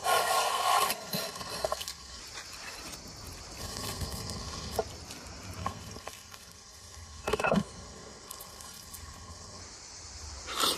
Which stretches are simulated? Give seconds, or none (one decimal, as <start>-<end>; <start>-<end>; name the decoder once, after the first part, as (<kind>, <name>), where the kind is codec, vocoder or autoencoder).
0.0-2.2 (codec, SNAC); 3.6-4.8; 5.6-9.6